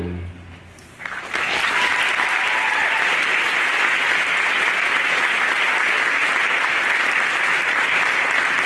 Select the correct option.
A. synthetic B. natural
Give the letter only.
B